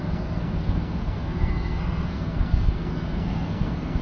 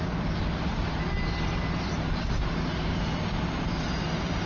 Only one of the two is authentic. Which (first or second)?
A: second